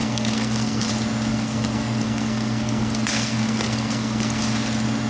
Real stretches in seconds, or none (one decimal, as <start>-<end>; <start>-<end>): 0.9-1.3; 4.4-5.1